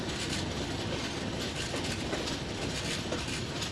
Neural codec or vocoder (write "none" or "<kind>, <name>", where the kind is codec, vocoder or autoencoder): none